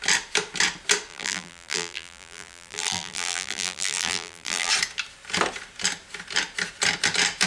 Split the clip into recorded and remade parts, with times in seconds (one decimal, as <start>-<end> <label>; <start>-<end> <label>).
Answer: 0.0-1.1 recorded; 1.1-4.7 remade; 4.7-7.5 recorded